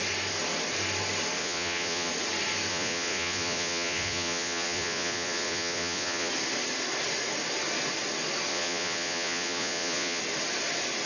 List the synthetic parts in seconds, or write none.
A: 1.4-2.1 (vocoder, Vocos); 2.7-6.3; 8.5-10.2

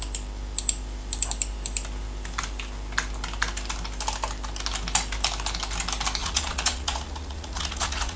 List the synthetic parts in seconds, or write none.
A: 6.2-8.2 (vocoder, Vocos)

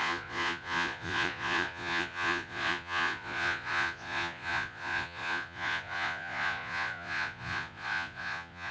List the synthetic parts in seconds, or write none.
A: 0.0-8.7 (vocoder, Vocos)